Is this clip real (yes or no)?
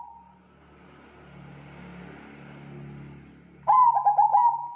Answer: yes